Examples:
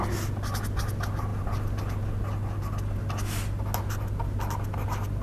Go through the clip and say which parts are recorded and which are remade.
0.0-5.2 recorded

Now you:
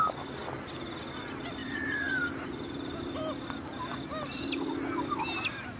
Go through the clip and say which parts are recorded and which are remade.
0.0-1.6 recorded; 1.6-3.1 remade; 3.1-4.1 recorded; 4.1-4.7 remade; 4.7-5.8 recorded

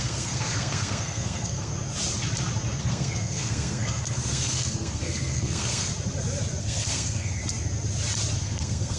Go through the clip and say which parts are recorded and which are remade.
0.0-1.7 remade; 1.7-2.8 recorded; 2.8-5.9 remade; 5.9-6.6 recorded; 6.6-7.4 remade; 7.4-8.4 recorded; 8.4-9.0 remade

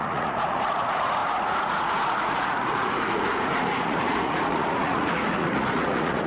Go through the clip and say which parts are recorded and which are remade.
0.0-6.3 remade

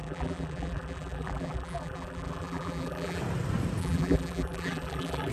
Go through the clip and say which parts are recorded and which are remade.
0.0-3.2 remade; 3.2-3.8 recorded; 3.8-5.3 remade

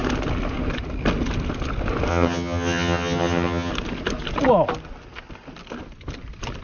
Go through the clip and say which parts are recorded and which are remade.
0.0-2.1 recorded; 2.1-3.7 remade; 3.7-6.6 recorded

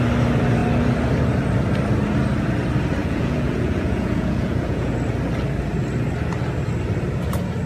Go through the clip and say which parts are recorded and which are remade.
0.0-3.0 recorded; 3.0-4.9 remade; 4.9-7.7 recorded